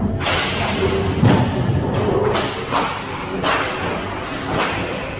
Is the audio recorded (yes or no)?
yes